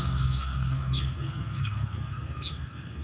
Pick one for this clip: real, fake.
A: fake